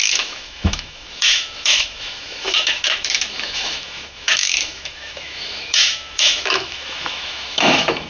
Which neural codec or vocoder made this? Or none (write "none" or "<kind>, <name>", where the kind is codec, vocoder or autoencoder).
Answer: autoencoder, DAC-VAE